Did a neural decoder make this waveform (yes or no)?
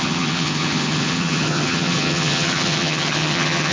yes